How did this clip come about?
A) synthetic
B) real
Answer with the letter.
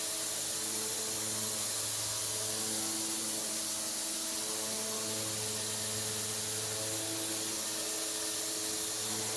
B